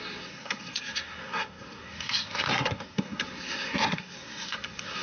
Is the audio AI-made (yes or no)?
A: yes